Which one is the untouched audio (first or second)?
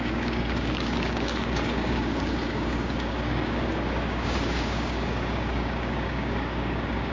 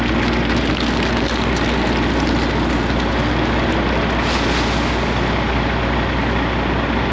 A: second